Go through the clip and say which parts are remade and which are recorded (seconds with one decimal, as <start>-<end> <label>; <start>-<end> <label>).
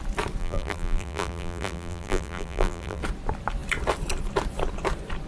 0.0-0.4 recorded; 0.4-3.0 remade; 3.0-5.3 recorded